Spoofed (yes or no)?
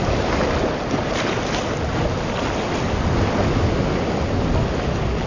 no